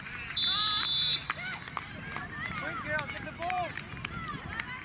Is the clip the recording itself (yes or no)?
no